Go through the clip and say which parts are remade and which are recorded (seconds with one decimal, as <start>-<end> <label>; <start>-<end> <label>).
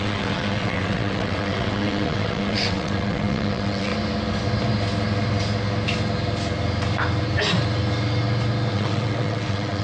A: 0.0-3.9 remade; 3.9-8.7 recorded; 8.7-9.8 remade